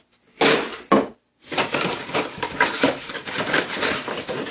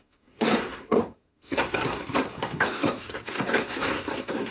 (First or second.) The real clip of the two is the first